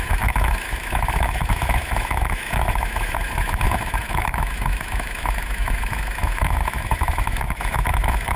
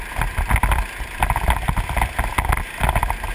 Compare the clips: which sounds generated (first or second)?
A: first